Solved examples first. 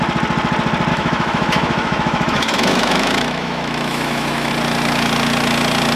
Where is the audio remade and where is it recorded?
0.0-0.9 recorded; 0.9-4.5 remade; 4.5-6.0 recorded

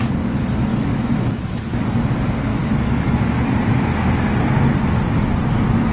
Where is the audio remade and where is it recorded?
0.0-0.7 recorded; 0.7-1.6 remade; 1.6-2.5 recorded; 2.5-3.2 remade; 3.2-5.9 recorded

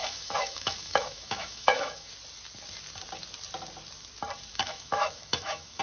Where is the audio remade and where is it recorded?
0.0-2.1 remade; 2.1-4.5 recorded; 4.5-5.8 remade